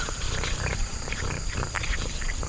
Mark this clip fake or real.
fake